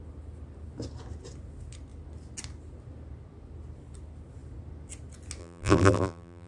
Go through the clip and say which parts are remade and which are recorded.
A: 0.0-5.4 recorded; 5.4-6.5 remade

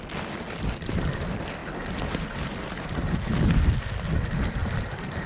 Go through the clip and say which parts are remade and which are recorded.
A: 0.0-4.6 recorded; 4.6-5.3 remade

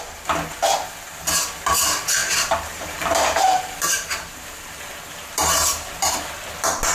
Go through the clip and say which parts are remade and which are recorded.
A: 0.0-2.2 recorded; 2.2-6.3 remade; 6.3-6.9 recorded